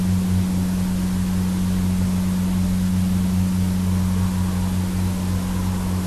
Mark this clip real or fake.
real